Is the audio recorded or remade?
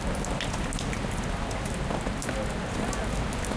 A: recorded